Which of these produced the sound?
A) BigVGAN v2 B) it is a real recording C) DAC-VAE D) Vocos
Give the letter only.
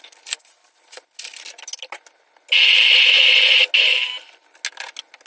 B